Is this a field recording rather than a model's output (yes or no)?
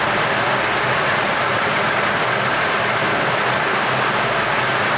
yes